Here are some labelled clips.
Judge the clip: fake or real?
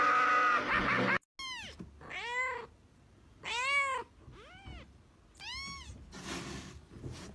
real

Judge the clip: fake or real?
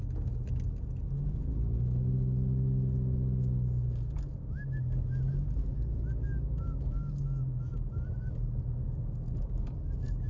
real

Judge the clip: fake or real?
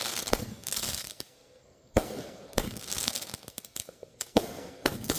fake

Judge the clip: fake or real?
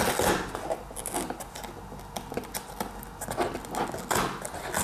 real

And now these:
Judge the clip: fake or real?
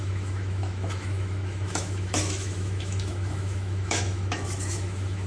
fake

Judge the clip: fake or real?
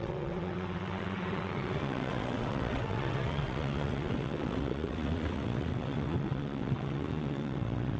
fake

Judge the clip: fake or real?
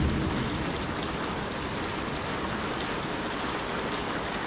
real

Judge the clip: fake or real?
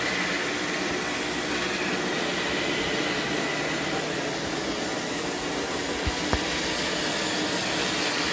real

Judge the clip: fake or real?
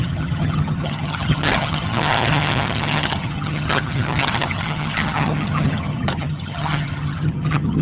fake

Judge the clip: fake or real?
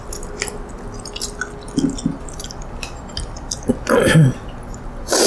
real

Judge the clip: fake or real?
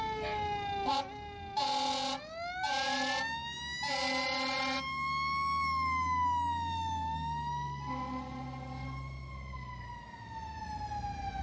real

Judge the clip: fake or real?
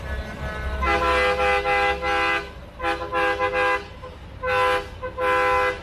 real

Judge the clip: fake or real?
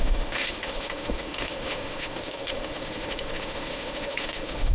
fake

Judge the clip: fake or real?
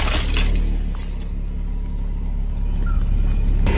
real